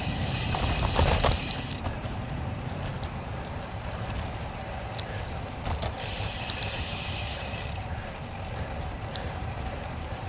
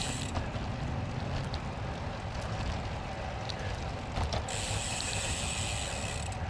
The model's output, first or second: first